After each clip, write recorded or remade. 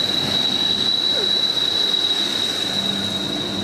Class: recorded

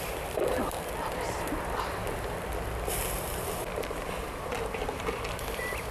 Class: remade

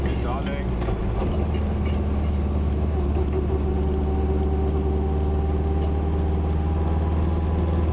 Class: recorded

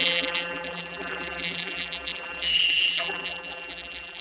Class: remade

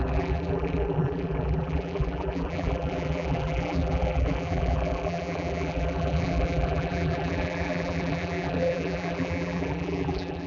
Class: remade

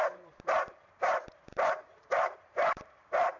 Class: remade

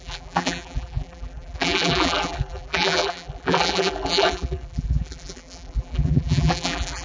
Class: remade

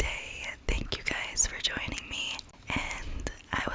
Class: recorded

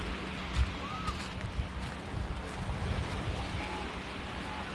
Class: remade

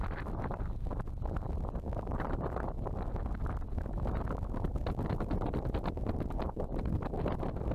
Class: recorded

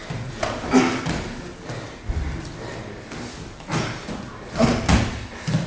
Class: recorded